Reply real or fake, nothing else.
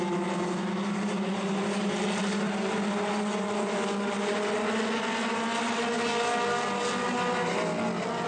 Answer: real